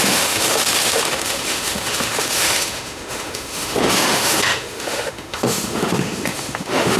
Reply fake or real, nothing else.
fake